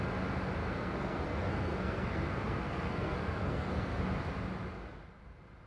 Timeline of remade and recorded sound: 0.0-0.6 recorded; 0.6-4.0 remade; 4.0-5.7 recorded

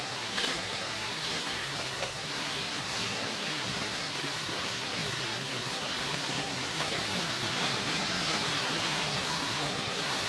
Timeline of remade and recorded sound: 0.0-10.3 remade

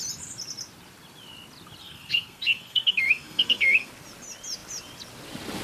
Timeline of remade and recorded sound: 0.0-1.8 recorded; 1.8-3.9 remade; 3.9-5.6 recorded

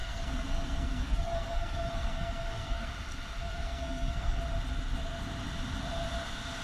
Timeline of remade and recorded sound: 0.0-2.9 remade; 2.9-3.4 recorded; 3.4-4.4 remade; 4.4-6.6 recorded